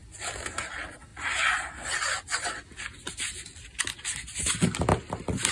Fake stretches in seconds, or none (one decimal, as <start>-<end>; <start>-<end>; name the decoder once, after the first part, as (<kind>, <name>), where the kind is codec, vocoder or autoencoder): none